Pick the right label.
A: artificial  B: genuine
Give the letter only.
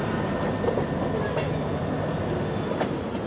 B